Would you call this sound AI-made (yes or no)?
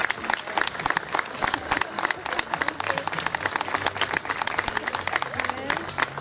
no